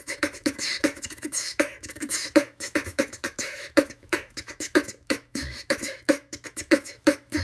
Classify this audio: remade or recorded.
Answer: remade